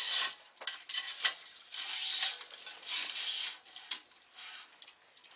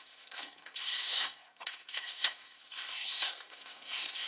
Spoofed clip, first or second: second